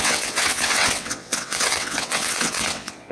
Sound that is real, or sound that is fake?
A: fake